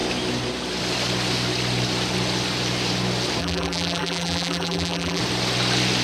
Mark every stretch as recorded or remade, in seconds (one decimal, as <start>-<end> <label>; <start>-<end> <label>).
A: 0.0-3.4 recorded; 3.4-5.2 remade; 5.2-6.0 recorded